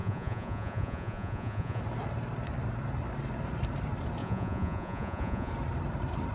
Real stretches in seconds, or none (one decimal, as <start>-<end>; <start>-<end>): 1.8-4.2; 5.5-6.3